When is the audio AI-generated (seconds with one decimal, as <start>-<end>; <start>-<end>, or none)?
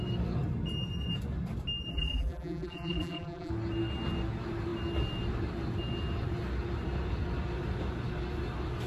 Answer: 1.9-3.5